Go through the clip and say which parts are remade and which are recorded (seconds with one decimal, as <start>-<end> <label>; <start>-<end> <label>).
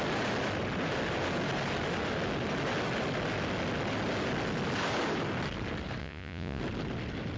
0.0-6.0 recorded; 6.0-6.6 remade; 6.6-7.4 recorded